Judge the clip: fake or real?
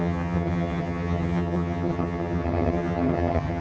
fake